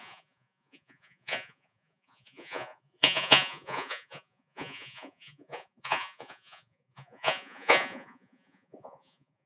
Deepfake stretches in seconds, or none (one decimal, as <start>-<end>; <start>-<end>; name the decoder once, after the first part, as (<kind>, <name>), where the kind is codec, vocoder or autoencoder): 0.0-9.5 (vocoder, Vocos)